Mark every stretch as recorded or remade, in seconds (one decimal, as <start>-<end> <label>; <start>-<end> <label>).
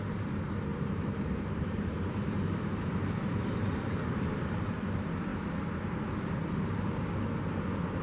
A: 0.0-0.7 recorded; 0.7-4.7 remade; 4.7-8.0 recorded